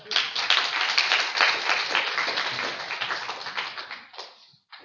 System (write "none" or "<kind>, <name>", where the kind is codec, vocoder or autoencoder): none